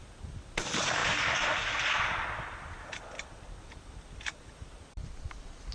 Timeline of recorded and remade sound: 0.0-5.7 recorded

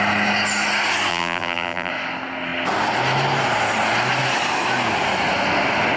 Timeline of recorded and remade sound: 0.0-1.1 recorded; 1.1-1.9 remade; 1.9-6.0 recorded